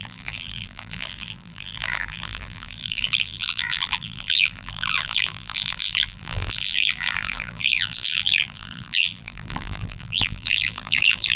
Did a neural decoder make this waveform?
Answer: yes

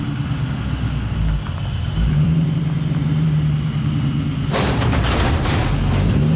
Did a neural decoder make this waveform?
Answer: yes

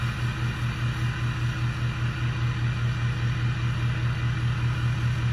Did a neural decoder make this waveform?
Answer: no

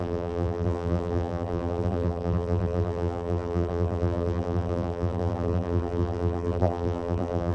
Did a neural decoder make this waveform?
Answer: yes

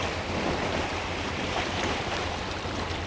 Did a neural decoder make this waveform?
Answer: yes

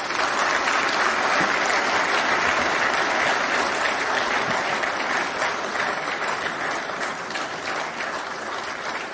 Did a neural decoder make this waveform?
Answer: no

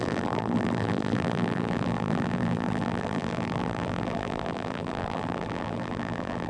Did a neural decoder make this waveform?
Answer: yes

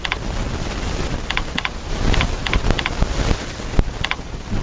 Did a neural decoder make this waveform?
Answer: no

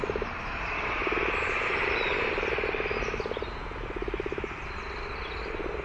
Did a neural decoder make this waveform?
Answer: yes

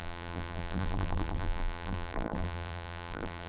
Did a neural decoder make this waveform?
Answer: yes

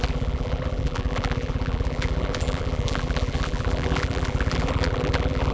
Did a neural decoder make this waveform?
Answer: yes